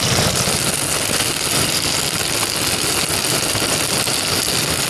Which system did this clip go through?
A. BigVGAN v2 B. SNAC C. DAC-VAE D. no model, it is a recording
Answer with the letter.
D